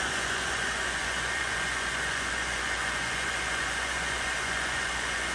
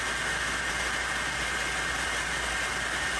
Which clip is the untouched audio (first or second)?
second